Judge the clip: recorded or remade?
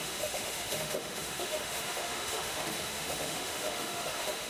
remade